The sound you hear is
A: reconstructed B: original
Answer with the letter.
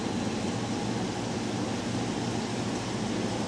B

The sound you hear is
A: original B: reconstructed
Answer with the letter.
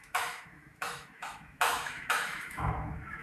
B